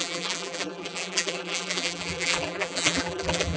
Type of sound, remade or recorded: remade